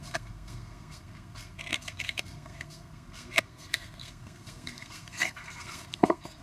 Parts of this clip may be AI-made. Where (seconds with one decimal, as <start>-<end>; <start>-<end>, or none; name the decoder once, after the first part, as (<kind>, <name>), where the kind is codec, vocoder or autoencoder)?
0.0-6.4 (codec, SNAC)